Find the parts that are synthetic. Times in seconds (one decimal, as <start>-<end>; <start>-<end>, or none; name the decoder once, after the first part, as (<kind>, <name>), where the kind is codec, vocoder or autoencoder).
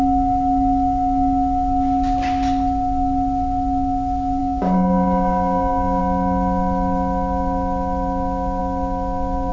4.4-6.0 (codec, DAC)